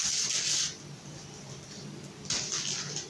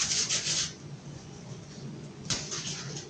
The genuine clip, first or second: first